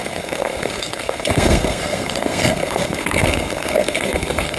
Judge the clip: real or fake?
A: fake